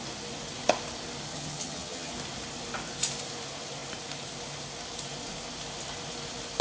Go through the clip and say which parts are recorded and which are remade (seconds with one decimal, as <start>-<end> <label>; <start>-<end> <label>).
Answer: 0.0-1.3 recorded; 1.3-2.1 remade; 2.1-6.6 recorded